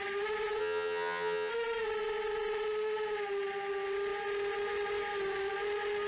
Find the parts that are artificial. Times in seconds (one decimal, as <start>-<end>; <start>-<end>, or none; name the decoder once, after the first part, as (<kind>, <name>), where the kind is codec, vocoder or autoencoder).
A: 0.6-1.5 (vocoder, HiFi-GAN)